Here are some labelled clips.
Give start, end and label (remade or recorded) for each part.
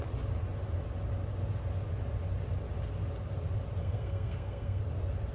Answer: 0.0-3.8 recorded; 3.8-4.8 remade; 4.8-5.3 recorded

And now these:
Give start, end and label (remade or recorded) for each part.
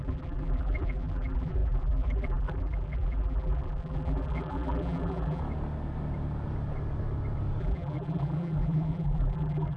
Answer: 0.0-5.4 remade; 5.4-7.6 recorded; 7.6-9.8 remade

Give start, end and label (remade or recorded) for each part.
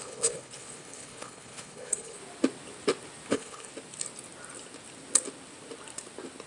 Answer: 0.0-2.2 remade; 2.2-3.3 recorded; 3.3-3.7 remade; 3.7-6.5 recorded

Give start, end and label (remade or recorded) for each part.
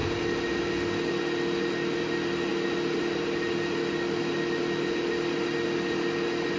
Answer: 0.0-6.6 recorded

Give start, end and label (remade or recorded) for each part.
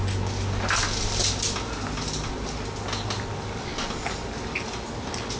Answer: 0.0-5.4 recorded